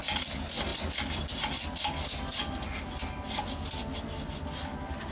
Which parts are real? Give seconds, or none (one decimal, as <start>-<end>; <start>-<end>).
0.0-5.1